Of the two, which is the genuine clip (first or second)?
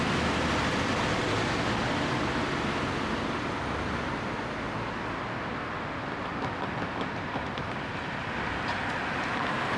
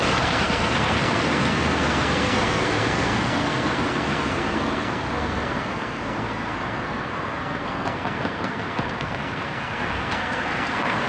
first